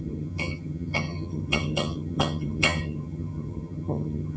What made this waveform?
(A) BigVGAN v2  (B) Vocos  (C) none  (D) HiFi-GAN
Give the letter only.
D